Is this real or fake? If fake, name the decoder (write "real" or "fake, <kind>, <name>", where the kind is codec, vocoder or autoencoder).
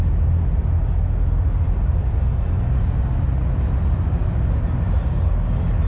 real